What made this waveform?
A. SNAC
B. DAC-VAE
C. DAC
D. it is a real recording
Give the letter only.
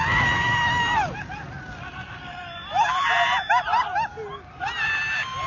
D